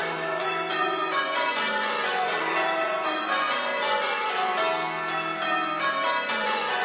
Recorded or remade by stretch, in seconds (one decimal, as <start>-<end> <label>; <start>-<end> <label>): 0.0-4.5 remade; 4.5-6.3 recorded; 6.3-6.8 remade